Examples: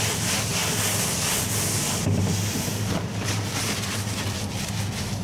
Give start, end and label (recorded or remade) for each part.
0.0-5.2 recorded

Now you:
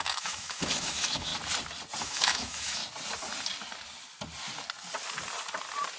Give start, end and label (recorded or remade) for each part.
0.0-1.3 remade; 1.3-2.0 recorded; 2.0-2.8 remade; 2.8-6.0 recorded

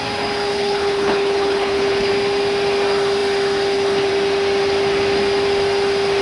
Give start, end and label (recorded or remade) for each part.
0.0-0.5 recorded; 0.5-2.1 remade; 2.1-6.2 recorded

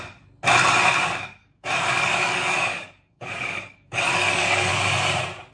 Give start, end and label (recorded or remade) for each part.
0.0-1.4 recorded; 1.4-4.7 remade; 4.7-5.5 recorded

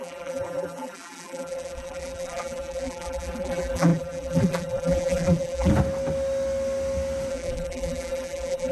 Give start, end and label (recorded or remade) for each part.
0.0-5.7 remade; 5.7-7.3 recorded; 7.3-8.7 remade

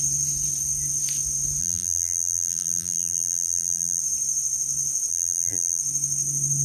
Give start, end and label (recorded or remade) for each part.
0.0-1.6 recorded; 1.6-4.0 remade; 4.0-5.1 recorded; 5.1-5.8 remade; 5.8-6.6 recorded